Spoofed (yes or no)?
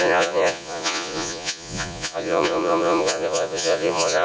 yes